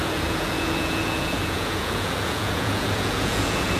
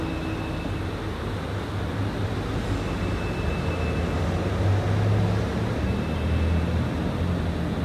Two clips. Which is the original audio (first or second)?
second